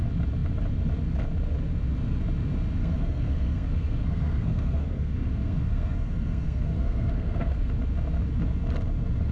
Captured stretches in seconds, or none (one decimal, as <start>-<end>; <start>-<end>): 0.0-2.8; 7.7-9.3